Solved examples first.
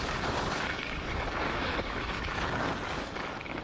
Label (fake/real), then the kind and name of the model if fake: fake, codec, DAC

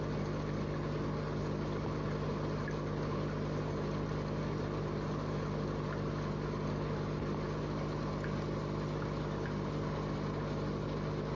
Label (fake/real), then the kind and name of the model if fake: real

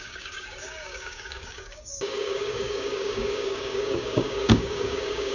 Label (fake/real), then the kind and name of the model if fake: fake, codec, DAC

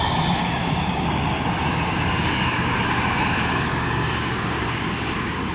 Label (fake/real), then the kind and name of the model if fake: fake, codec, DAC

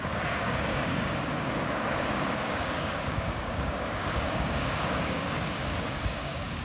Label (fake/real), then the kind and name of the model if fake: fake, codec, DAC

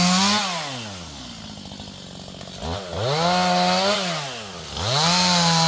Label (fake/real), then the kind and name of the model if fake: real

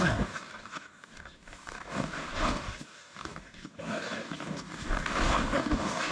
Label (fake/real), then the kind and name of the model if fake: fake, codec, DAC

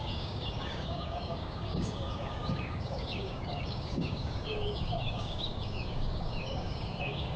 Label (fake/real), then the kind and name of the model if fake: fake, codec, DAC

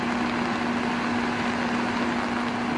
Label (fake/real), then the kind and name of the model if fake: real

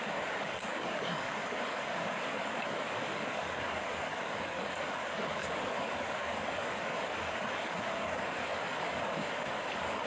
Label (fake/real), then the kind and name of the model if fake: fake, codec, DAC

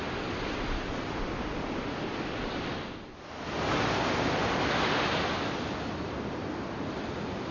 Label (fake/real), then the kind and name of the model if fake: real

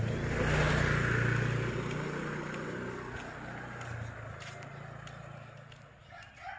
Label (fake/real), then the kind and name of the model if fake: real